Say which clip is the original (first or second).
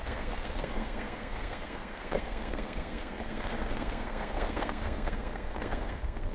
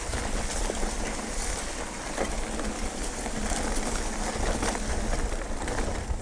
second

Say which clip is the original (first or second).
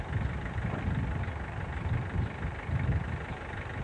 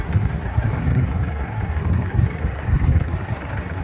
first